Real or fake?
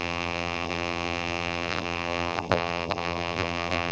fake